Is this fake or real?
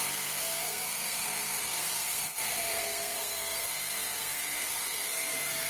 fake